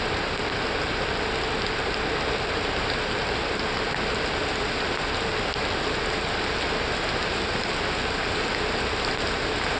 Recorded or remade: recorded